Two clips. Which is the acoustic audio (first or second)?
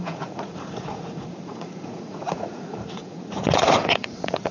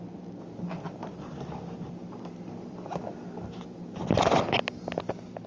second